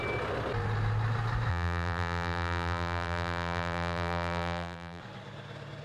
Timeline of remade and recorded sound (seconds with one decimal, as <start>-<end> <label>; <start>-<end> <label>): 0.0-1.5 recorded; 1.5-5.0 remade; 5.0-5.8 recorded